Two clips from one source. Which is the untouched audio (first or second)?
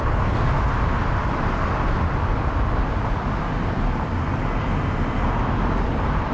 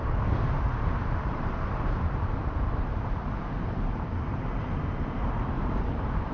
first